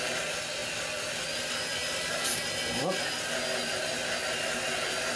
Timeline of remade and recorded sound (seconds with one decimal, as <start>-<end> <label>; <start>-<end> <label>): 0.0-5.2 recorded